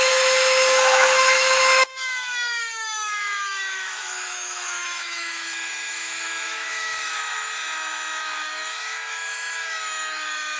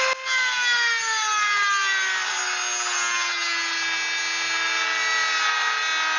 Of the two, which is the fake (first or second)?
first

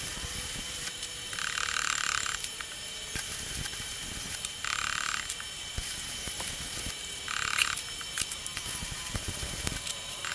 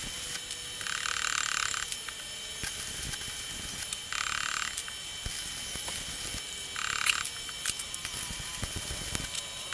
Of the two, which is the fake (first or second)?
first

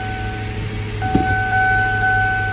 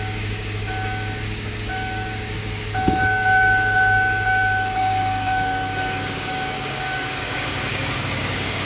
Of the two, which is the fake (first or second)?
second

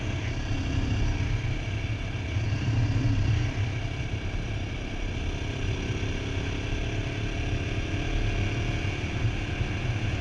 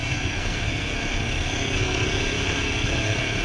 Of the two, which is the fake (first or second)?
second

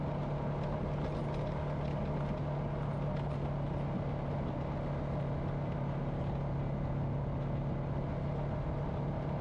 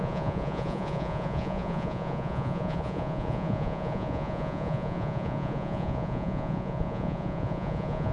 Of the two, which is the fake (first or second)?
second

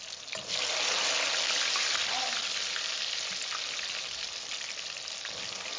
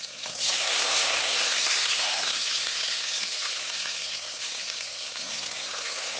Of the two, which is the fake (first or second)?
second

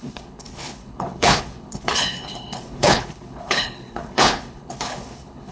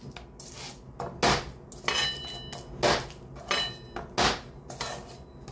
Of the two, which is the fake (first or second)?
first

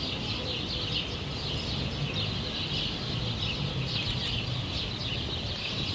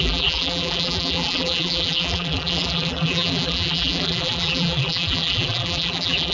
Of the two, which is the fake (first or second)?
second